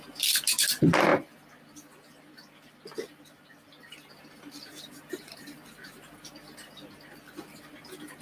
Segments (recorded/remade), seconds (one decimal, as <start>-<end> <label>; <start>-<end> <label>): 0.0-8.2 recorded